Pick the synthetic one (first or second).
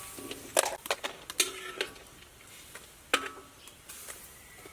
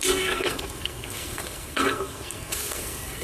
second